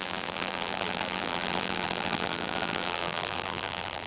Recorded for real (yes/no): no